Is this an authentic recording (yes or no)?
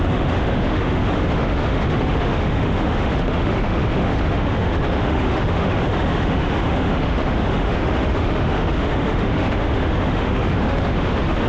no